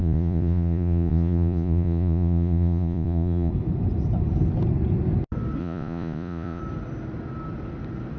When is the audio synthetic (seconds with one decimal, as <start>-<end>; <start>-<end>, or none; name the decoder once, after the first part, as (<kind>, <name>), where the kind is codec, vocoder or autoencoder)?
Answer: 0.0-3.5 (vocoder, Vocos); 5.6-6.6